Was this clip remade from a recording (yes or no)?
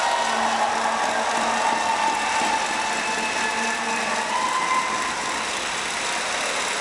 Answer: no